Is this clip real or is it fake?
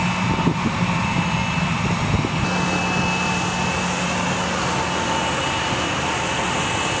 real